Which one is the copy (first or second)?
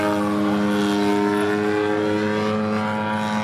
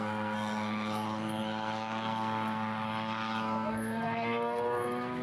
second